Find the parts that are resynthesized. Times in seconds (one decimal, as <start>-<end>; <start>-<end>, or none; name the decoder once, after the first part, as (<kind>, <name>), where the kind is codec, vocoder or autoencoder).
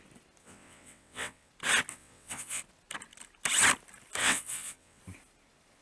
0.4-1.5 (vocoder, WaveNeXt); 1.9-2.6; 4.2-5.0